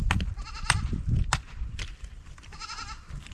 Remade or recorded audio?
remade